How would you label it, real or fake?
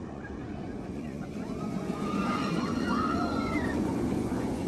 fake